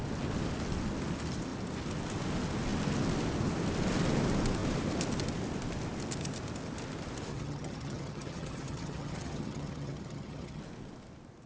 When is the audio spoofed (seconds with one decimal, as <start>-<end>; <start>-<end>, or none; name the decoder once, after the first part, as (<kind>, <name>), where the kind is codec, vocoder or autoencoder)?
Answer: 7.3-10.6 (vocoder, HiFi-GAN)

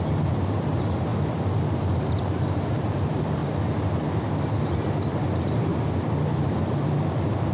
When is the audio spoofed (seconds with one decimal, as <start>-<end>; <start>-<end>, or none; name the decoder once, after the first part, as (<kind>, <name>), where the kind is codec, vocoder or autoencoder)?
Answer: 0.0-1.1 (vocoder, BigVGAN v2); 2.0-3.4; 4.6-5.7; 6.3-7.5

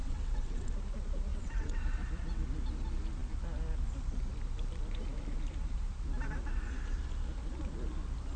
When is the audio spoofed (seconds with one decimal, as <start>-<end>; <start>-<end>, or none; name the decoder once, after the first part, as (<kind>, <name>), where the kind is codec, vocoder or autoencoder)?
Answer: 0.0-0.7 (vocoder, WaveNeXt); 1.3-1.8

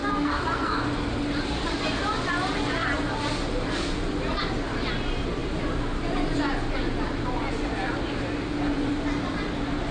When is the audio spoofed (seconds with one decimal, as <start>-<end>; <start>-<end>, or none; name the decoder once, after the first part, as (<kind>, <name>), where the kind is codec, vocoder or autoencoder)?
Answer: 0.0-0.8 (codec, SNAC)

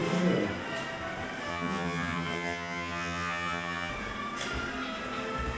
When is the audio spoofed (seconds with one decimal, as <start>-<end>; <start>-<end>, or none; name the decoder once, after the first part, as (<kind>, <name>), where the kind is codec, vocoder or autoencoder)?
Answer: 1.5-3.9 (vocoder, HiFi-GAN)